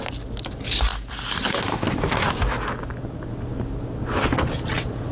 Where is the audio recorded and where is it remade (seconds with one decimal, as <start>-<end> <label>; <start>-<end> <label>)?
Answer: 0.0-5.1 recorded